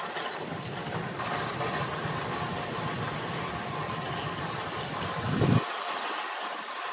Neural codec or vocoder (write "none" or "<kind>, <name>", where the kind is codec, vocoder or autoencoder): none